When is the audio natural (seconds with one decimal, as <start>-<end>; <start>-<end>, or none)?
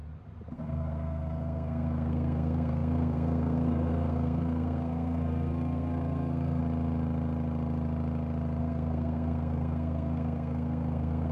0.0-0.5; 6.6-8.6